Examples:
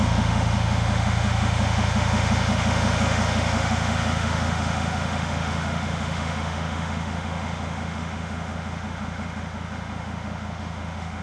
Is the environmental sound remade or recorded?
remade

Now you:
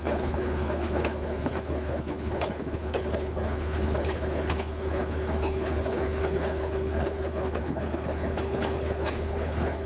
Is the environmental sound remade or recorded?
remade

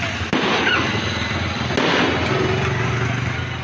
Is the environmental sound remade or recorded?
recorded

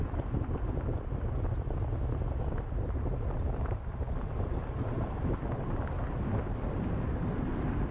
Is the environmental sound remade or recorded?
recorded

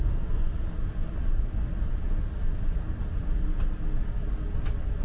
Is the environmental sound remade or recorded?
recorded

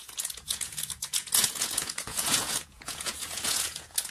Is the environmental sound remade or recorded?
remade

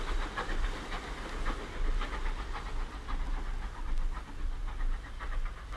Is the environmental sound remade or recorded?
recorded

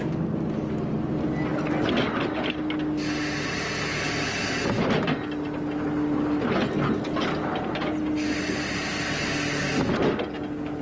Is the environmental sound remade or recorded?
recorded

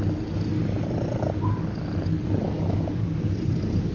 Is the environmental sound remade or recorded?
recorded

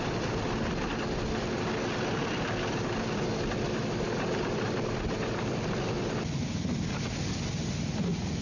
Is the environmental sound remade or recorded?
recorded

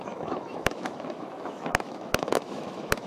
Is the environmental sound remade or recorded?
remade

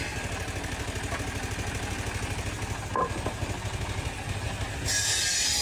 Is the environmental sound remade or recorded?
recorded